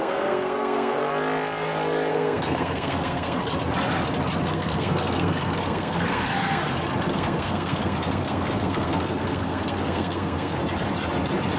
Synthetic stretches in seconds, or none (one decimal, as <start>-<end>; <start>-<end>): 0.0-1.0; 2.1-3.4; 4.4-6.6; 7.1-10.6